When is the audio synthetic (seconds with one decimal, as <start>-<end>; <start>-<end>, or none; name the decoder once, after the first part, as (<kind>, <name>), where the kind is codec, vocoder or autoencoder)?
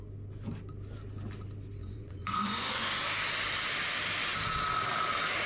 1.8-2.8 (vocoder, Vocos)